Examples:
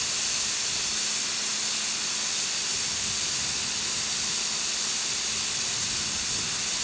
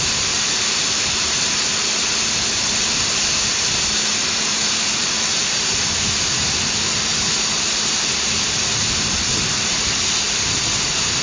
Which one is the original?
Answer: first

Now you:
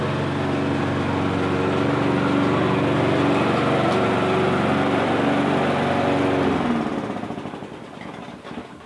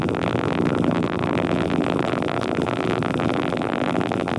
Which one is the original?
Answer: first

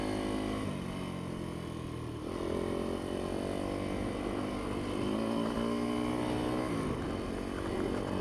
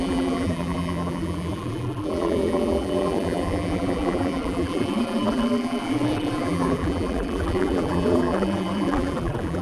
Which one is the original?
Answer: first